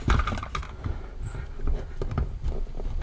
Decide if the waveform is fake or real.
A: real